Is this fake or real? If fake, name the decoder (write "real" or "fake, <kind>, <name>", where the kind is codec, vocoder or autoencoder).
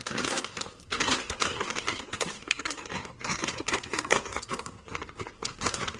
fake, codec, SNAC